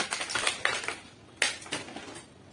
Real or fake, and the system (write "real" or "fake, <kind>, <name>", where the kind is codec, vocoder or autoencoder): real